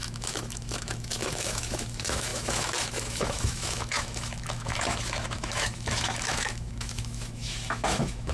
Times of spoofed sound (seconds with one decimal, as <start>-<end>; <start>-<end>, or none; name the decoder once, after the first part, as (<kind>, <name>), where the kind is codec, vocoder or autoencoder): 0.0-8.3 (autoencoder, DAC-VAE)